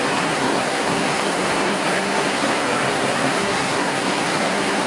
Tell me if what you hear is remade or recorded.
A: remade